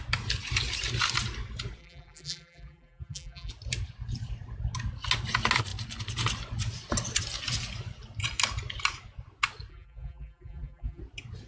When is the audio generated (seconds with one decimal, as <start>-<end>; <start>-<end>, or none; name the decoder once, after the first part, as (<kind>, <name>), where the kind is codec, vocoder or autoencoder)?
1.8-3.5 (vocoder, BigVGAN v2); 9.7-11.0